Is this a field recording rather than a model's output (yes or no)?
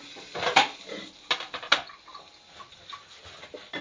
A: yes